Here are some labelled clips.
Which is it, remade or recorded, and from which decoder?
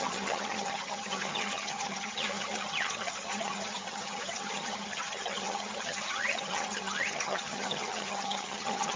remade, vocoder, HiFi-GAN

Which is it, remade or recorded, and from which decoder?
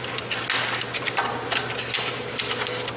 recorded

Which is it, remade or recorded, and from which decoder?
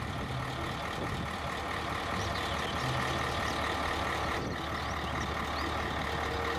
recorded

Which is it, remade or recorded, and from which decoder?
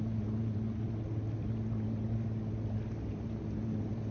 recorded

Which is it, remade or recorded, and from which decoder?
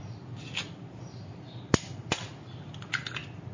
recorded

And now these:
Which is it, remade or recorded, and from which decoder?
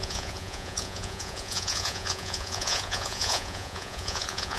remade, vocoder, Vocos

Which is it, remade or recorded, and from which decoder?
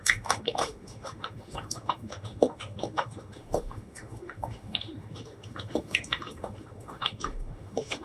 remade, autoencoder, DAC-VAE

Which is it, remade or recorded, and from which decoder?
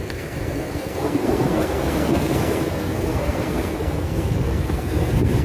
remade, codec, SNAC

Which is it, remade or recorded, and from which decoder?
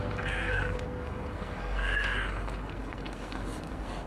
remade, codec, SNAC